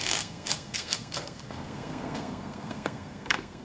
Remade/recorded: remade